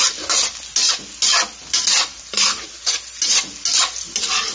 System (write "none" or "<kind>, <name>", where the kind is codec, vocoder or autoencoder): none